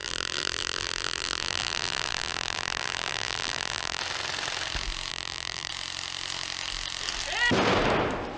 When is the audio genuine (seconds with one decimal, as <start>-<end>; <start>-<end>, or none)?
4.0-5.1; 5.7-8.4